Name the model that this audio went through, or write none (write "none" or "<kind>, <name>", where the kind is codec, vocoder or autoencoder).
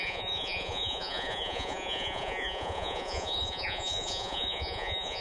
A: vocoder, Vocos